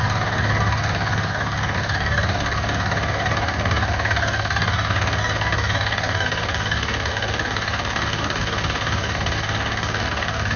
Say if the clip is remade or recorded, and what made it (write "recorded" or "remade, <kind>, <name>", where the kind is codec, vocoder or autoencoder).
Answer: remade, codec, DAC